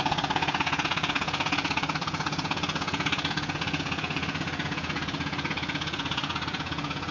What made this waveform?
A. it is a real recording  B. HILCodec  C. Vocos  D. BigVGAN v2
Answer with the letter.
C